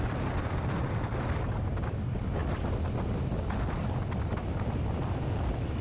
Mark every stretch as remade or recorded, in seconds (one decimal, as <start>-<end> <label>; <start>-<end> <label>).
0.0-5.8 recorded

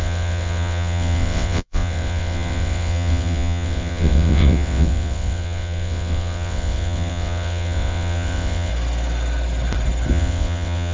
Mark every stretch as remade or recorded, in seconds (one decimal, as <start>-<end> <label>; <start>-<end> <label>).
0.0-8.7 remade; 8.7-10.1 recorded; 10.1-10.9 remade

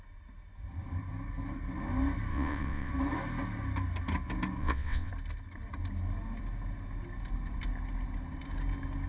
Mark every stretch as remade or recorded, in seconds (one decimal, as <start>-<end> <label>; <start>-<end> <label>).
0.0-2.3 recorded; 2.3-2.9 remade; 2.9-4.6 recorded; 4.6-5.1 remade; 5.1-9.1 recorded

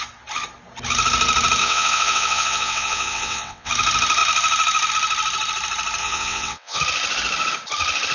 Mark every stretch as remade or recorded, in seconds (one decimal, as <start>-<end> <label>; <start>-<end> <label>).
0.0-1.6 recorded; 1.6-3.7 remade; 3.7-6.0 recorded; 6.0-6.8 remade; 6.8-8.1 recorded

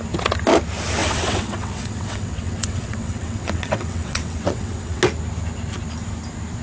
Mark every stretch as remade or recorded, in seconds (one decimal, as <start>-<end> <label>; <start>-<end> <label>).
0.0-1.0 recorded; 1.0-5.0 remade; 5.0-6.6 recorded

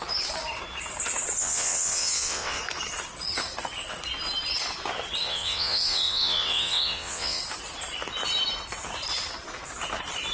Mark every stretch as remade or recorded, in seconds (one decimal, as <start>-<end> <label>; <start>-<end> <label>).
0.0-1.4 recorded; 1.4-2.6 remade; 2.6-5.2 recorded; 5.2-7.4 remade; 7.4-10.3 recorded